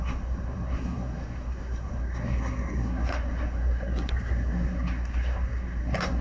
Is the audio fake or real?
fake